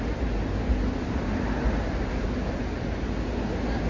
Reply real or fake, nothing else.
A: real